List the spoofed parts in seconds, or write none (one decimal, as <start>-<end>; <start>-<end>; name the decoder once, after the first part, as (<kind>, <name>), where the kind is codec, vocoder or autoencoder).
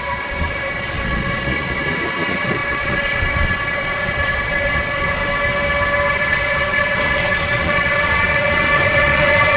0.0-5.2 (vocoder, Vocos); 6.1-9.6